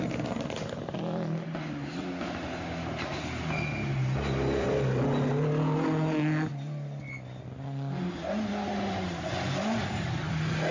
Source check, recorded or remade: recorded